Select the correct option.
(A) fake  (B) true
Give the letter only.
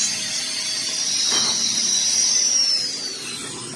B